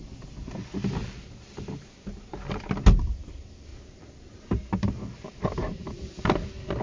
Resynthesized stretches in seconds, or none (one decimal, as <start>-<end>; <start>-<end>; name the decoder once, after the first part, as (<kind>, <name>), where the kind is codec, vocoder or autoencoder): 1.0-1.6 (vocoder, BigVGAN v2); 3.7-6.1